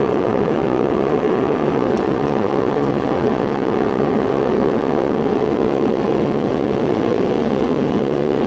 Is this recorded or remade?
remade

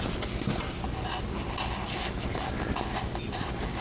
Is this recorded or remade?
recorded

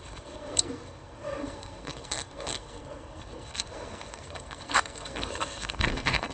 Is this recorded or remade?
remade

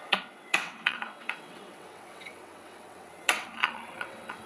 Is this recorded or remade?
remade